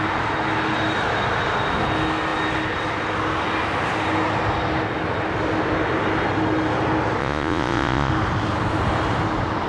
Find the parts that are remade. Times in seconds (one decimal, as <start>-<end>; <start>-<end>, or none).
7.2-8.1